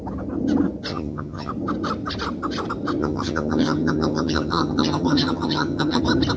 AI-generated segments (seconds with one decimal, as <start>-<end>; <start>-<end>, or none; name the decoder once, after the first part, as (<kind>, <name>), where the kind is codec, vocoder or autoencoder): 0.9-1.5 (vocoder, HiFi-GAN); 3.0-6.0